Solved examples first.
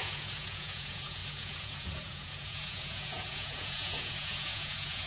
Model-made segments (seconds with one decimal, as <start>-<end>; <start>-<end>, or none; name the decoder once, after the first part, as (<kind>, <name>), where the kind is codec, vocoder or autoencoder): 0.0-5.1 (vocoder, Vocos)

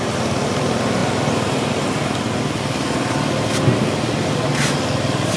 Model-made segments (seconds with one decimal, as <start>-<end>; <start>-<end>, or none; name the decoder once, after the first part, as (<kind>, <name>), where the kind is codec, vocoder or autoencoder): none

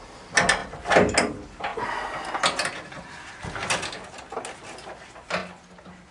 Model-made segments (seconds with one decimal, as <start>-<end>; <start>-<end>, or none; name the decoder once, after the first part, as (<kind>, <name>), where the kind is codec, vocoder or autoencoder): none

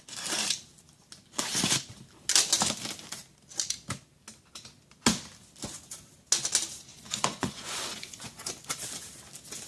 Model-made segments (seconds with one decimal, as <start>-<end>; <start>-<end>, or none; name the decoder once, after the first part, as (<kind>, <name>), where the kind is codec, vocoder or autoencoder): 6.9-8.5 (vocoder, Vocos)

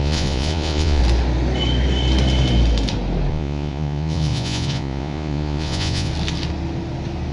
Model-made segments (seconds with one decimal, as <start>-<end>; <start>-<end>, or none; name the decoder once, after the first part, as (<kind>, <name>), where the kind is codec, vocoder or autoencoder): 0.0-1.0 (vocoder, Vocos); 3.3-6.1

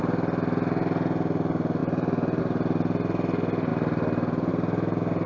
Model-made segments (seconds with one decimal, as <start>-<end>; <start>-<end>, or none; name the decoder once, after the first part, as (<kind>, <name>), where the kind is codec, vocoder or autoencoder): none